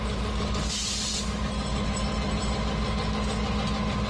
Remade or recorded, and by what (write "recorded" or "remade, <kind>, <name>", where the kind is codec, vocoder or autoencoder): recorded